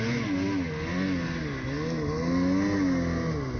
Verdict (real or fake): real